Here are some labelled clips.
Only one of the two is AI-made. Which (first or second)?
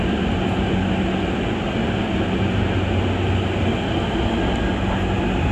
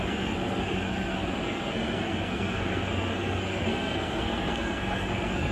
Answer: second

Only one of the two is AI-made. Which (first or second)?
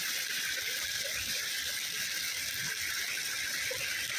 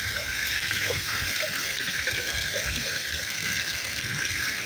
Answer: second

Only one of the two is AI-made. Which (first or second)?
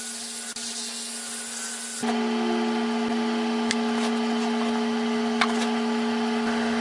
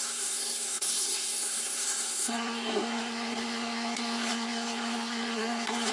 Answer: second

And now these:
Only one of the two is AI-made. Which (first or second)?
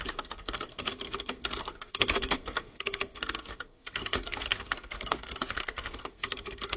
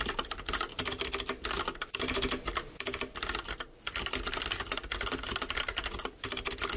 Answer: first